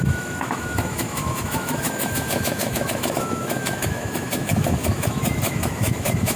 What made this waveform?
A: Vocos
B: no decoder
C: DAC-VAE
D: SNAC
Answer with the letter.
C